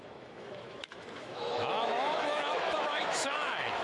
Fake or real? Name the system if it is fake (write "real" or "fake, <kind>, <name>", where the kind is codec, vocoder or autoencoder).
fake, autoencoder, DAC-VAE